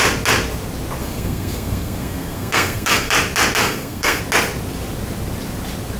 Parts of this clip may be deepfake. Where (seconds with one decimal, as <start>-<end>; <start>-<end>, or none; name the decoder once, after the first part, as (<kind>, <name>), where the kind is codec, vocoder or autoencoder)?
1.0-3.1 (codec, SNAC); 3.6-4.2